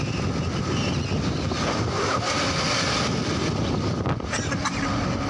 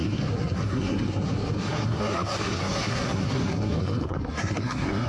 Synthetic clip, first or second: second